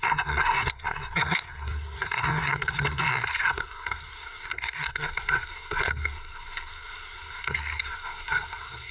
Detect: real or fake fake